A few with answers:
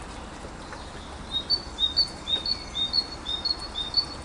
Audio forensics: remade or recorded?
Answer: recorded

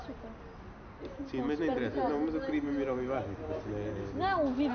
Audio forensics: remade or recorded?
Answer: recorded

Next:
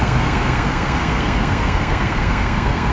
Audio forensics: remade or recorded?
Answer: remade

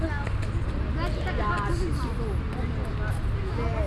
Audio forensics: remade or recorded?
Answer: recorded